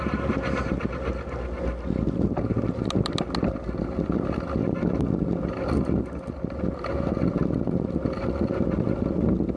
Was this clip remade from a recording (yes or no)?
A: no